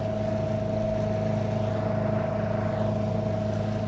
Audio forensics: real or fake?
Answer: real